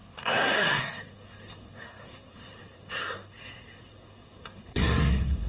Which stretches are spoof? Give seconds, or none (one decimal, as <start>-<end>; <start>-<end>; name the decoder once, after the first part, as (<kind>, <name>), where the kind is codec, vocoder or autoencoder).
0.0-5.5 (codec, SNAC)